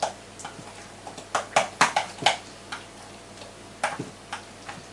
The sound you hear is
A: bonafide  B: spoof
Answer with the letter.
A